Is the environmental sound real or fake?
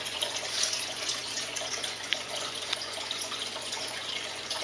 fake